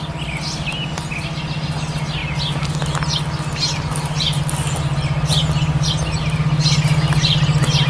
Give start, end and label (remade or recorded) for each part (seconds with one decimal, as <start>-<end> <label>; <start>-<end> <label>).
0.0-7.9 recorded